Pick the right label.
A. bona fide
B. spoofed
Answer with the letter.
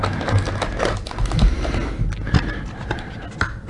A